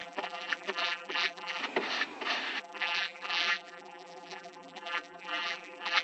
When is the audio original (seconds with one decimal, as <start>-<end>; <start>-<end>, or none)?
1.6-2.6